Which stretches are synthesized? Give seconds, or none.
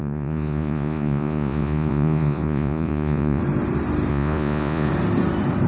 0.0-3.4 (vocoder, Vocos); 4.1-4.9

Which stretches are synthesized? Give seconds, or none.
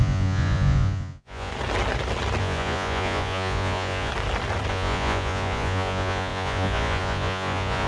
0.0-1.5 (vocoder, Vocos); 2.4-4.1; 4.7-7.9